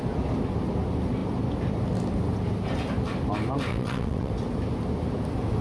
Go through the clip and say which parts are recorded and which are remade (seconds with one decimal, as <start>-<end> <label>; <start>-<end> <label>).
0.0-3.7 recorded; 3.7-4.3 remade; 4.3-5.6 recorded